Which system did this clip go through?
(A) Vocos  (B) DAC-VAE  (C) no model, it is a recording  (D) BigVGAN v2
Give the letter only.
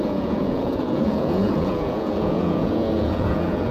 A